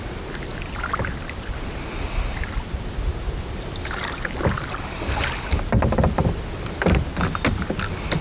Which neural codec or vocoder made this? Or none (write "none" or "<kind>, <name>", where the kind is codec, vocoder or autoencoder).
none